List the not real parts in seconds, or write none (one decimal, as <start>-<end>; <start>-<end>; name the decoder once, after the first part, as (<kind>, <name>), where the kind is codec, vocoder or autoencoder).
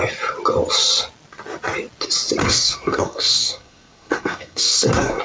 2.4-5.2 (codec, SNAC)